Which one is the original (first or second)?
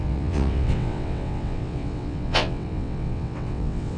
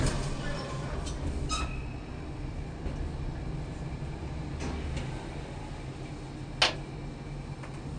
second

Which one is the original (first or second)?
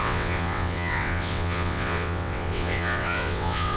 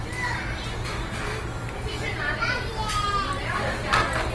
second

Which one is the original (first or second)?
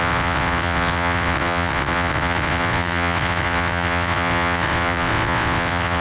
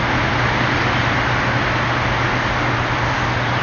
second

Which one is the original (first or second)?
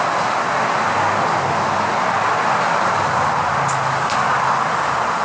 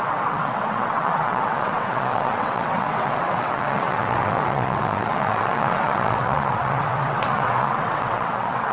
first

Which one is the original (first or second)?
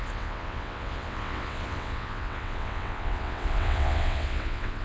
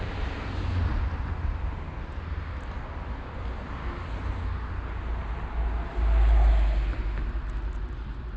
second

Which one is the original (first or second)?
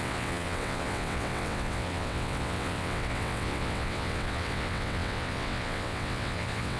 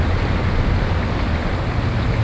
second